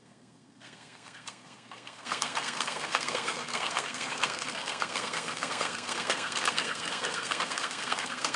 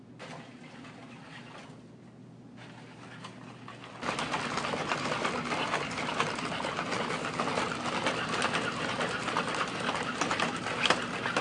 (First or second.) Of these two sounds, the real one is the second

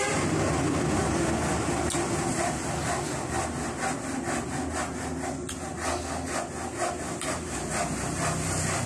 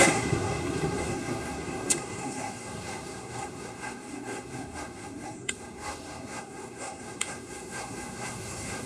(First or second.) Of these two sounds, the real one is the first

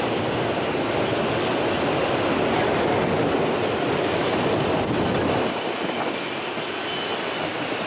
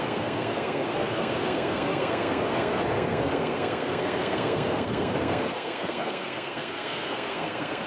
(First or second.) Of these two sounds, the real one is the first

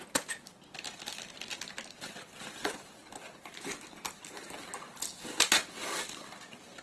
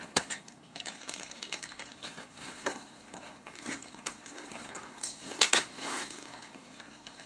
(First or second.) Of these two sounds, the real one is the first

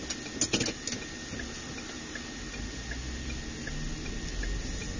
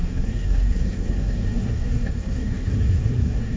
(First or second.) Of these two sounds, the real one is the first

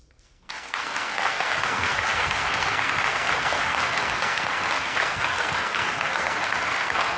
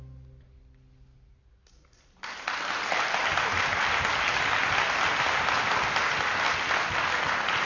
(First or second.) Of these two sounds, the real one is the second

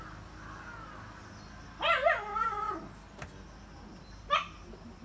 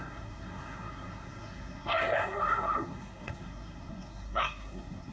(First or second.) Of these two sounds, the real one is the first